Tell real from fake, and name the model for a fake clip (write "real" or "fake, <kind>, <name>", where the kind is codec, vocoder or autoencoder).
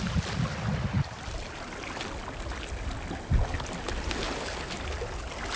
real